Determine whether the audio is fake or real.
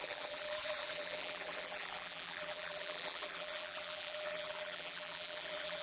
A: fake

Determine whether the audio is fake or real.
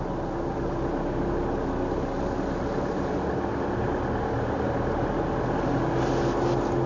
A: real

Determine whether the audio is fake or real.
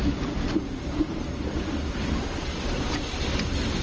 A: real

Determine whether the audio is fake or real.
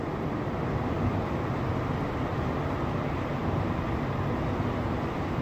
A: real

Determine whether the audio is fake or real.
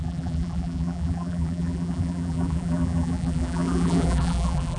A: fake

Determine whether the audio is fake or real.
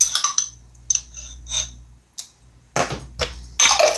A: real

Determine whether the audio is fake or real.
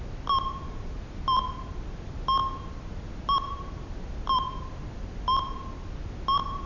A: real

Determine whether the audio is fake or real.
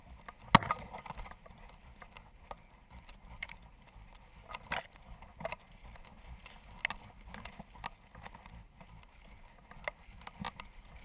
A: real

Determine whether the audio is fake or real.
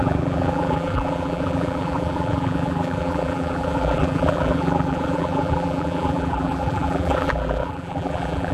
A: fake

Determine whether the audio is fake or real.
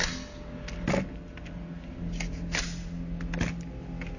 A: real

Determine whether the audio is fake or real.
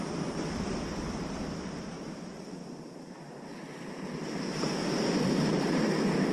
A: fake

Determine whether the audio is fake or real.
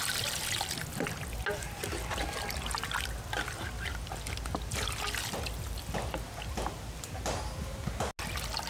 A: real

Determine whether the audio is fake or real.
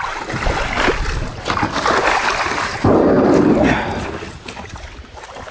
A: real